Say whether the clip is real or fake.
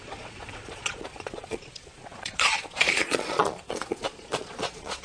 fake